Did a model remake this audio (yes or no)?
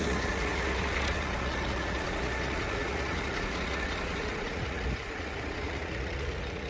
yes